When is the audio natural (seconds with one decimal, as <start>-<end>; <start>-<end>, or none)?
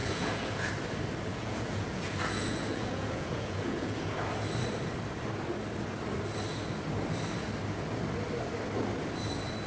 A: 0.7-1.3; 4.3-9.7